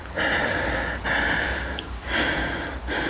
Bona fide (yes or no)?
yes